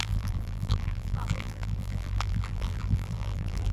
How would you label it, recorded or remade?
remade